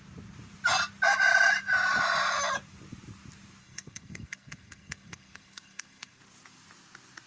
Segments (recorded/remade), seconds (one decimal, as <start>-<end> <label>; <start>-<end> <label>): 0.0-3.6 recorded; 3.6-6.2 remade; 6.2-7.3 recorded